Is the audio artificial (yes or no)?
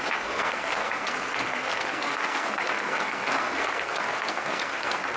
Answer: yes